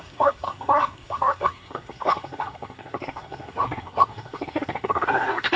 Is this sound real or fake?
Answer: fake